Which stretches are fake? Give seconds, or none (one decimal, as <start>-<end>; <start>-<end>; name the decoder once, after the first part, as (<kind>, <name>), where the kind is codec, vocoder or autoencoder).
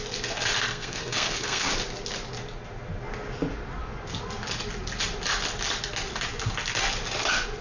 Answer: 0.7-1.7 (codec, SNAC)